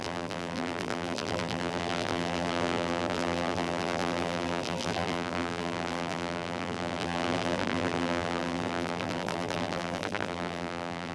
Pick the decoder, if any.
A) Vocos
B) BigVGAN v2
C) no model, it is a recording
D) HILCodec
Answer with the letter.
B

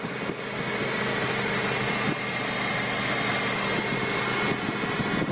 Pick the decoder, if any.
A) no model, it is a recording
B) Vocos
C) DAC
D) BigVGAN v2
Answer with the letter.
A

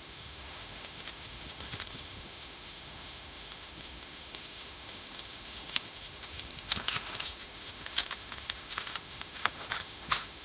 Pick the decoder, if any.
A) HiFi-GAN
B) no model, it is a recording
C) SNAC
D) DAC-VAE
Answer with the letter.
D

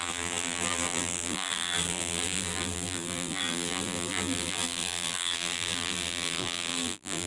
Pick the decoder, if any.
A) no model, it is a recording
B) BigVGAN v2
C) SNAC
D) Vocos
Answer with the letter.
B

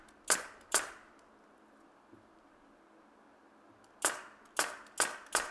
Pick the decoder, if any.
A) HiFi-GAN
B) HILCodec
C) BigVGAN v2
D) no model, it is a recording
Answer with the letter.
D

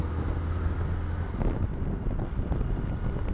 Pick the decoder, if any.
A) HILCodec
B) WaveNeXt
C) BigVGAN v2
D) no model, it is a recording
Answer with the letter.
D